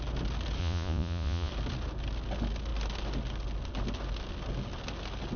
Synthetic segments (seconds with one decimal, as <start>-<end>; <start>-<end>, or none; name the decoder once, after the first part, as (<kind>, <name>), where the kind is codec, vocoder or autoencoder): 0.6-1.5 (vocoder, Vocos)